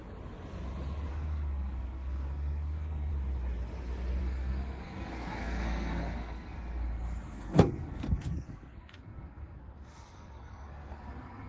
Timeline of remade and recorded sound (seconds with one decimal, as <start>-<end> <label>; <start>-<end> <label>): 0.0-1.1 recorded; 1.1-3.1 remade; 3.1-4.2 recorded; 4.2-11.5 remade